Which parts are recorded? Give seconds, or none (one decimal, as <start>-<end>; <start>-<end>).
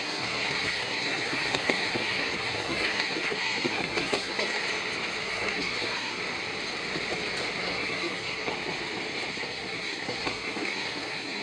4.6-5.2; 6.2-7.6; 8.5-9.3